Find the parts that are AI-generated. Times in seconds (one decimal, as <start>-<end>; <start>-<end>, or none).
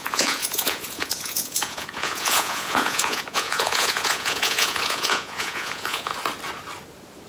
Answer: 0.0-6.1